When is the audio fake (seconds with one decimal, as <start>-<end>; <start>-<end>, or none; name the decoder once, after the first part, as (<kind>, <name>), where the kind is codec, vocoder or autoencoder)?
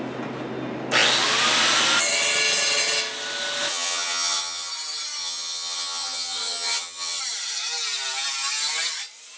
3.7-4.7 (vocoder, HiFi-GAN); 5.2-7.2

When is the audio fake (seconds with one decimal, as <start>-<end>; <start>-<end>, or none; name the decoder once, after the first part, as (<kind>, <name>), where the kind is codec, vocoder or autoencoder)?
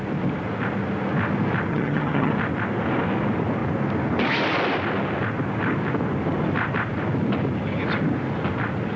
1.7-2.3 (vocoder, HiFi-GAN)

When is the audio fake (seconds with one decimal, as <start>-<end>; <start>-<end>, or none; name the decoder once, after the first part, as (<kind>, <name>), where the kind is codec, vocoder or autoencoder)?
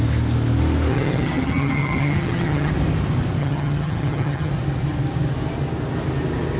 0.9-2.7 (vocoder, HiFi-GAN); 3.4-4.5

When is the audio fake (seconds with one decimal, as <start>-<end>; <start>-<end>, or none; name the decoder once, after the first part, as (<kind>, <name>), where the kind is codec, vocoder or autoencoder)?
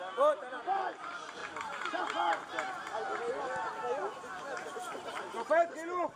none